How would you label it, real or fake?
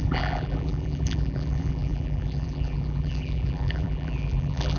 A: fake